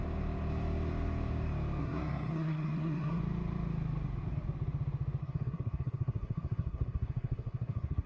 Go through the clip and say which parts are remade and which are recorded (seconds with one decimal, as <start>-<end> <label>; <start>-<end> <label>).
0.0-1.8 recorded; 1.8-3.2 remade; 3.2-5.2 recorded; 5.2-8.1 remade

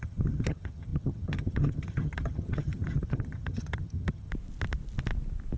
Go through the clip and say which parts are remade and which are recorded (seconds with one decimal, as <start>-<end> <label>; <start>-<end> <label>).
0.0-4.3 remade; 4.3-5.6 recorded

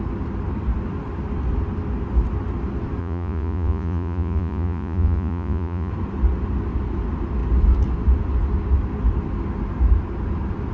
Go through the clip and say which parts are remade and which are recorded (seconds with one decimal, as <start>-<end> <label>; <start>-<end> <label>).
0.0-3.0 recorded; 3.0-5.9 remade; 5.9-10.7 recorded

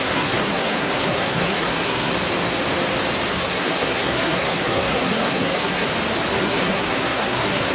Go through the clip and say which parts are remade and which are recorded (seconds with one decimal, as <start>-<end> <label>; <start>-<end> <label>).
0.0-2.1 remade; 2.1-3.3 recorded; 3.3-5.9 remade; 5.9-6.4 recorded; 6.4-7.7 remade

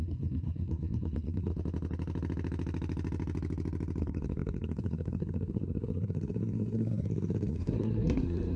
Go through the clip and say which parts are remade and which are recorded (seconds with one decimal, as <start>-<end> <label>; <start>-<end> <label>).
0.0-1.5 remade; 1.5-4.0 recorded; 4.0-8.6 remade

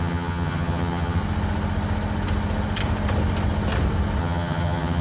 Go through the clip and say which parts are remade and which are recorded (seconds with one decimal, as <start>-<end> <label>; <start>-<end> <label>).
0.0-1.2 remade; 1.2-4.2 recorded; 4.2-5.0 remade